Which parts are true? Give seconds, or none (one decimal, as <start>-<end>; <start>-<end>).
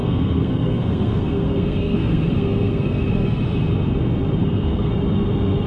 3.4-4.4; 4.9-5.7